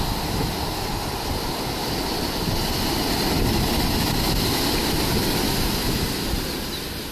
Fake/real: real